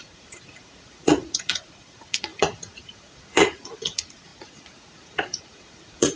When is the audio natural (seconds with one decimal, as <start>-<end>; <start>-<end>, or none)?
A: none